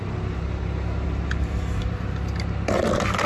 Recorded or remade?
recorded